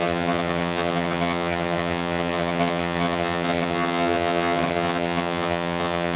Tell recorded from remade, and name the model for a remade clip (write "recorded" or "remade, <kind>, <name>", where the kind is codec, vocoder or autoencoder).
remade, vocoder, HiFi-GAN